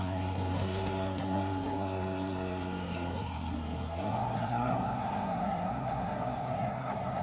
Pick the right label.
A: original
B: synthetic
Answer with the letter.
B